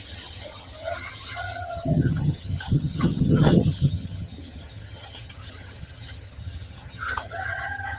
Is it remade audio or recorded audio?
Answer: remade